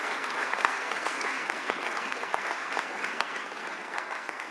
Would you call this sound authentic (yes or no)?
no